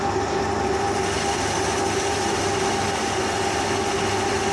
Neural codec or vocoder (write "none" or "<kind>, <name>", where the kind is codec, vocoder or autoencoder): none